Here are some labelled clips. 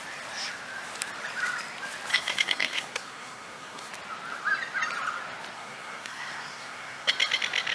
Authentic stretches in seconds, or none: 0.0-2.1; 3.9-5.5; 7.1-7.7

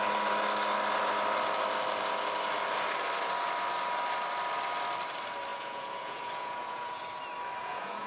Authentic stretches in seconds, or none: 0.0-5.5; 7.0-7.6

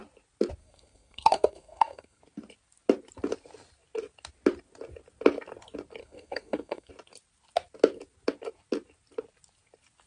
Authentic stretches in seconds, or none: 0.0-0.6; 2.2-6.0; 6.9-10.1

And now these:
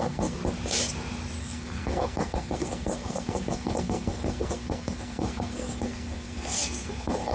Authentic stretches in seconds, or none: 0.4-1.4